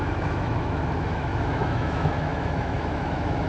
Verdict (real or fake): fake